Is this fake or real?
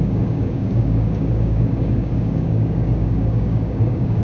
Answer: fake